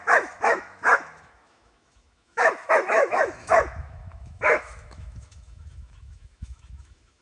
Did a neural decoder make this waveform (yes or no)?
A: yes